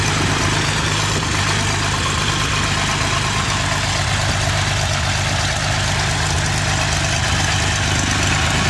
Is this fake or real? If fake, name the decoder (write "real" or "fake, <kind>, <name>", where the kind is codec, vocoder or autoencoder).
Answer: real